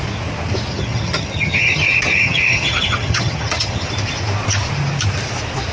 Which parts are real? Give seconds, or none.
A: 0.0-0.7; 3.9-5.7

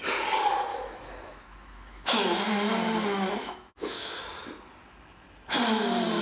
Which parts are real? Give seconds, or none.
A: 0.0-0.7; 2.2-3.4; 4.2-6.2

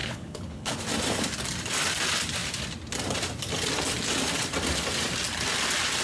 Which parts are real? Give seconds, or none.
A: 0.8-6.0

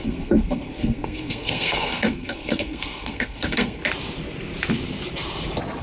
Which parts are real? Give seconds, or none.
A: 3.8-5.8

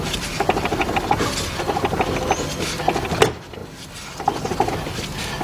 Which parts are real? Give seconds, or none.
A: 0.0-3.6; 4.7-5.4

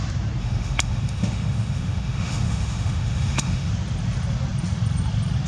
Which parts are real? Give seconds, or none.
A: 0.0-0.4; 3.7-5.5

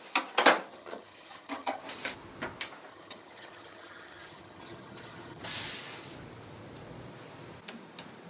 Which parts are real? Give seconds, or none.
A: 0.0-0.7; 1.8-2.9; 5.4-8.3